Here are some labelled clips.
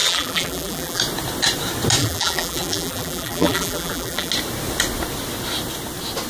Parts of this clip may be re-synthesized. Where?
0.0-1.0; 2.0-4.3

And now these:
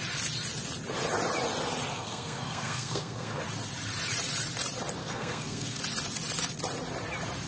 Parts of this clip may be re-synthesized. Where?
1.9-3.4; 5.0-5.8

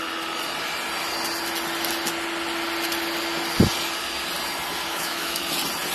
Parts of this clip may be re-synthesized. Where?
4.9-5.4